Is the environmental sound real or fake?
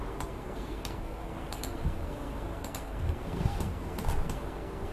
fake